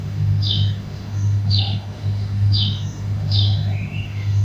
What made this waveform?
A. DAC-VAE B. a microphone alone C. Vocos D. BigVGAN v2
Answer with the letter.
A